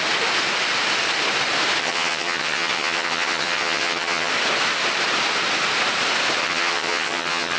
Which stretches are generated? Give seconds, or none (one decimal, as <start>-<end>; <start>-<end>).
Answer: 1.8-4.3; 6.4-7.6